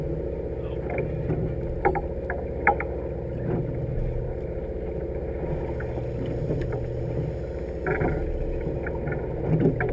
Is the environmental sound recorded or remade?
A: recorded